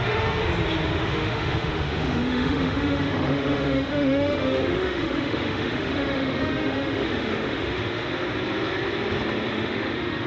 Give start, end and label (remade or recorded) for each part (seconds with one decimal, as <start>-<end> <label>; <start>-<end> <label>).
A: 0.0-0.4 remade; 0.4-1.0 recorded; 1.0-8.1 remade; 8.1-9.5 recorded; 9.5-10.3 remade